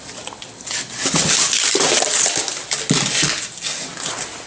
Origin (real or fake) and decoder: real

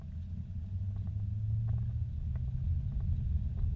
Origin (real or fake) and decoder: real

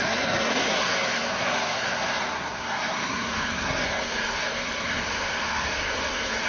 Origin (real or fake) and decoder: fake, codec, SNAC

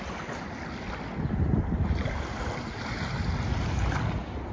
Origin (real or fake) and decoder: real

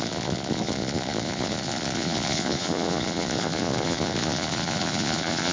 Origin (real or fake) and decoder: fake, vocoder, Vocos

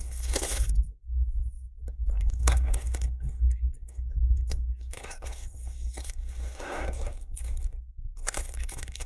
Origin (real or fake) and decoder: fake, codec, SNAC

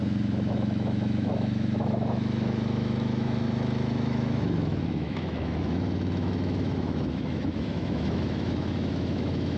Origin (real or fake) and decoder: fake, autoencoder, DAC-VAE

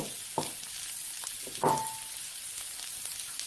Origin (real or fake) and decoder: real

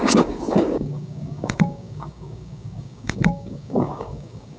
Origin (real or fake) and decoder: fake, codec, DAC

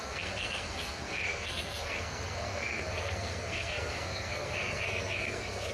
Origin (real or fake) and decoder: fake, codec, SNAC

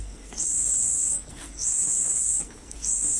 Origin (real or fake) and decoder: fake, codec, SNAC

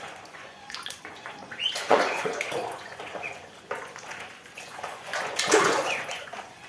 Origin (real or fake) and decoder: fake, vocoder, Vocos